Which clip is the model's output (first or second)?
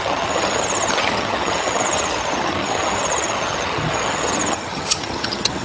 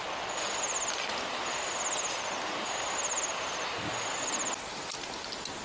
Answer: first